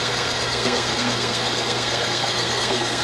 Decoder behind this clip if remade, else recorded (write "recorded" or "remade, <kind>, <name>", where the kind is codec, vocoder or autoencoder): remade, codec, SNAC